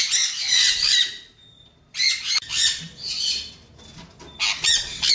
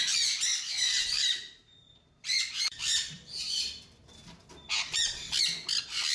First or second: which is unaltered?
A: first